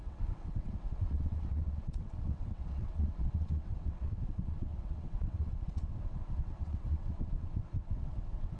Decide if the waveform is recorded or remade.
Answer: remade